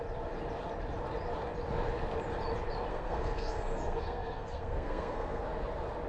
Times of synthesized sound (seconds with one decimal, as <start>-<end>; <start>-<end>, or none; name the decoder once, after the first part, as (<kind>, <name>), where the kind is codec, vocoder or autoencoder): 2.9-5.4 (codec, SNAC)